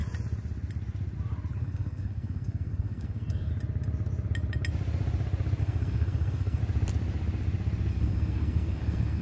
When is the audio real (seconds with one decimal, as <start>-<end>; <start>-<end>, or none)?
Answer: 0.0-1.6; 3.5-5.6; 6.6-7.9